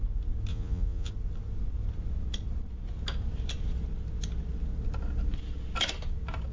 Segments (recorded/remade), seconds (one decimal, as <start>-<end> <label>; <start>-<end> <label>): 0.0-0.5 recorded; 0.5-1.1 remade; 1.1-6.5 recorded